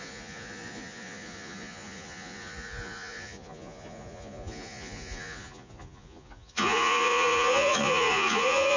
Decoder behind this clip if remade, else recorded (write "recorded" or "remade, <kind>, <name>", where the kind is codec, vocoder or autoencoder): remade, vocoder, Vocos